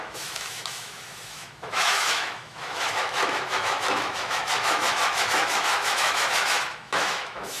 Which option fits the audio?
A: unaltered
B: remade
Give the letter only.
B